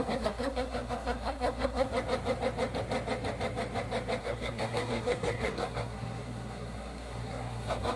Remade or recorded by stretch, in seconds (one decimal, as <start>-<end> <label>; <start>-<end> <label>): 0.0-1.9 remade; 1.9-4.2 recorded; 4.2-8.0 remade